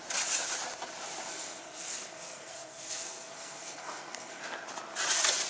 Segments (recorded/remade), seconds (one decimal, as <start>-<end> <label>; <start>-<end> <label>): 0.0-1.3 recorded; 1.3-4.4 remade; 4.4-5.5 recorded